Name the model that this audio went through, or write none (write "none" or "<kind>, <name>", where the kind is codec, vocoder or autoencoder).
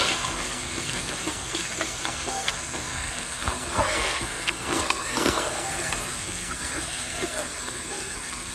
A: codec, SNAC